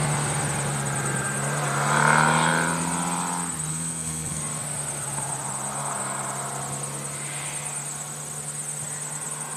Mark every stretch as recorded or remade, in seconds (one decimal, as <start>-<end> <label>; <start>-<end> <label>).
0.0-3.7 recorded; 3.7-4.4 remade; 4.4-9.6 recorded